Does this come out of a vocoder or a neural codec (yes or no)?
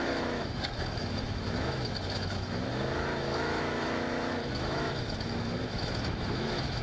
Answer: yes